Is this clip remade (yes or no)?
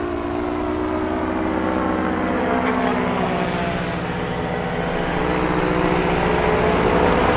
no